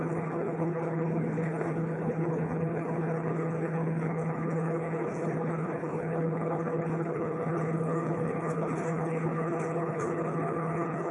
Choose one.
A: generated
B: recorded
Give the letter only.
A